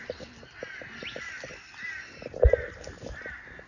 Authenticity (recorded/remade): recorded